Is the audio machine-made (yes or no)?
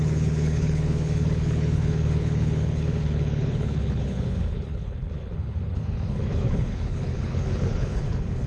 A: yes